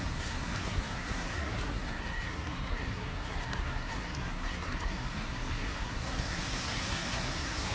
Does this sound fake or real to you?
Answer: fake